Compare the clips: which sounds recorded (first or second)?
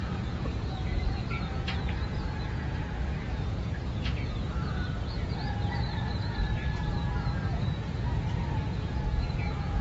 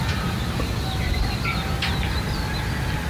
second